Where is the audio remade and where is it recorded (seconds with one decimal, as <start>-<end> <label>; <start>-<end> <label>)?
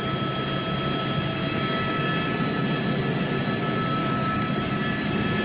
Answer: 0.0-4.0 recorded; 4.0-4.7 remade; 4.7-5.4 recorded